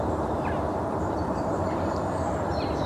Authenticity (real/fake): fake